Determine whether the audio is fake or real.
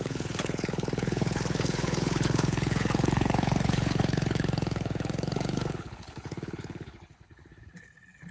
fake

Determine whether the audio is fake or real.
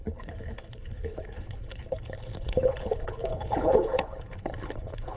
fake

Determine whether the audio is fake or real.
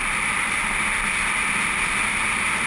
real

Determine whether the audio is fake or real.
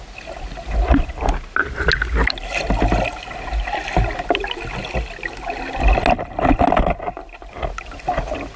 real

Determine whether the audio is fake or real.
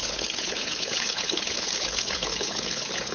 fake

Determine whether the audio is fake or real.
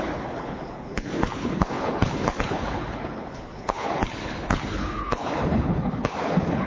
fake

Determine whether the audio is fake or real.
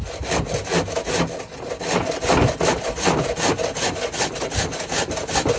real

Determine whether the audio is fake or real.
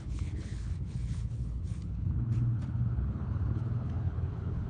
fake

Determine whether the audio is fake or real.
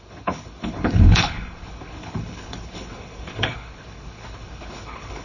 fake